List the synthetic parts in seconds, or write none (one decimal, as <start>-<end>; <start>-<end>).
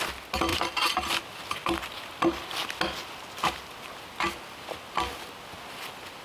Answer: 0.5-1.2